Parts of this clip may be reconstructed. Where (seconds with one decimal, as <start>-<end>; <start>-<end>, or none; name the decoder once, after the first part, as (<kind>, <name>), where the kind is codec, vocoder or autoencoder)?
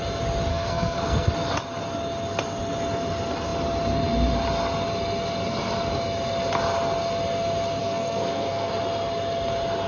0.5-1.3 (codec, SNAC); 7.8-8.7